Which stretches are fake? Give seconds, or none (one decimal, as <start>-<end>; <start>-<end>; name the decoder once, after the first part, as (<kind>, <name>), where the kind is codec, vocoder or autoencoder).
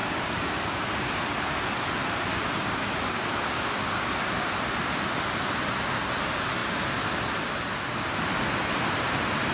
0.0-1.2 (codec, DAC); 2.3-4.1